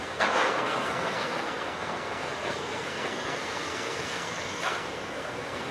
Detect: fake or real fake